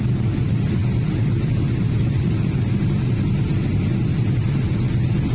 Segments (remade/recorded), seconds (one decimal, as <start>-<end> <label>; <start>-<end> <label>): 0.0-5.3 recorded